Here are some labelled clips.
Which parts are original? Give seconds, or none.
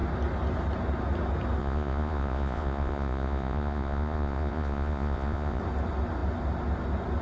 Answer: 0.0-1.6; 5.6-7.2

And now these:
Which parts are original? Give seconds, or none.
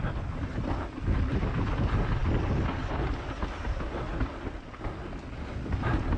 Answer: 0.0-6.2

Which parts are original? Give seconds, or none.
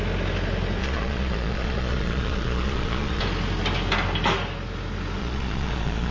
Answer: 0.0-0.8; 3.2-5.2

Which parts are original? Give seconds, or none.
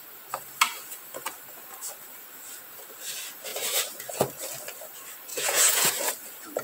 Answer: 0.0-5.3; 5.9-6.6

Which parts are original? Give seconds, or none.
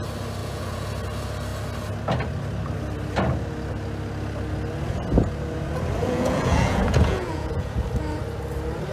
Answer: 0.0-0.4; 0.9-6.0; 7.8-8.9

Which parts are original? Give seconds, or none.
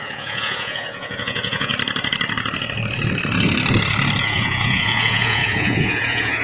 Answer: 1.7-4.2